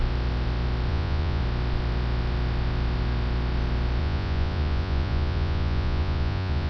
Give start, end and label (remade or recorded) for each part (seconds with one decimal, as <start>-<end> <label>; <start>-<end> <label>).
0.0-0.9 recorded; 0.9-1.4 remade; 1.4-4.0 recorded; 4.0-6.7 remade